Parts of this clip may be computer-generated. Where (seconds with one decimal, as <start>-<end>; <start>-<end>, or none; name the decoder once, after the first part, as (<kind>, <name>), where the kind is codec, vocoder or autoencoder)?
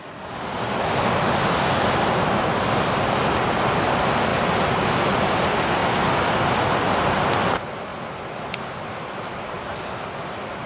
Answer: none